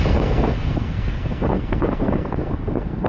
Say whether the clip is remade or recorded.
remade